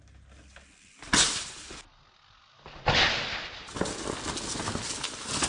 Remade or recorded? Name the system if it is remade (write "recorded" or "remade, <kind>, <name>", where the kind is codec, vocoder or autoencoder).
recorded